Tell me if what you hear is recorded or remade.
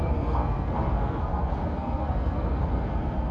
remade